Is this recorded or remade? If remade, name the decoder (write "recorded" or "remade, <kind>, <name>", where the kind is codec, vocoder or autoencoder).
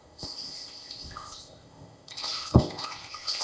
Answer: remade, codec, ZipCodec